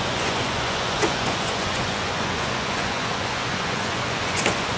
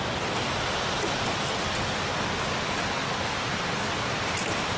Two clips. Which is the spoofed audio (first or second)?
first